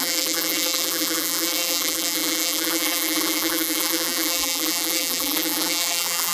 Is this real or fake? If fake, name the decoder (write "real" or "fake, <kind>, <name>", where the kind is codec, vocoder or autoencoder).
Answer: fake, vocoder, BigVGAN v2